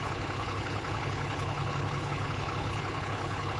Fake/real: fake